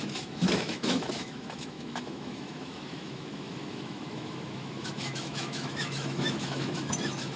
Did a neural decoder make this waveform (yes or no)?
yes